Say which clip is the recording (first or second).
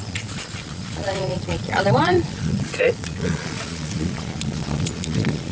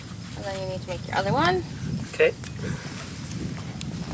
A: second